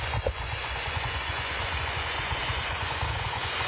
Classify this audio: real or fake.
fake